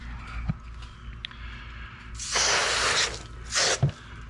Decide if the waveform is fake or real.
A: real